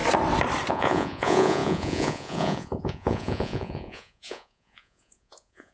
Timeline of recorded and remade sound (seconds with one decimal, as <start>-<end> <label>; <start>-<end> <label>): 0.0-0.7 recorded; 0.7-5.7 remade